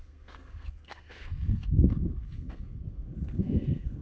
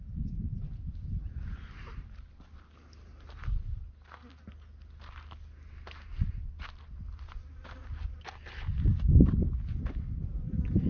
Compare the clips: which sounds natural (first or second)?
second